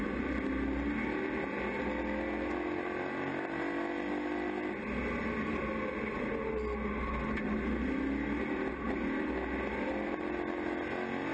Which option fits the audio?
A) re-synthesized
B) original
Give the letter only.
B